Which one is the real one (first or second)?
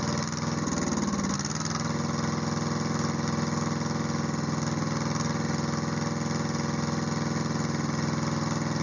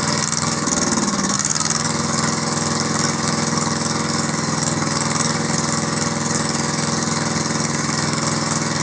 first